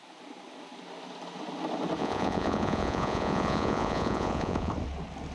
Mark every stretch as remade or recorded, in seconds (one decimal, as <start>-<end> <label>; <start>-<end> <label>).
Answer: 0.0-2.0 recorded; 2.0-4.7 remade; 4.7-5.3 recorded